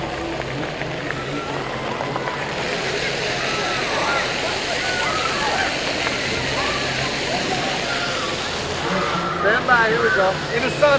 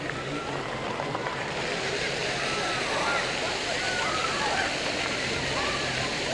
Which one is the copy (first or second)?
second